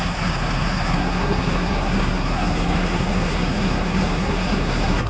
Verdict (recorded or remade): remade